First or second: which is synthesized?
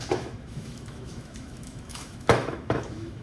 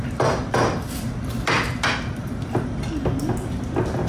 first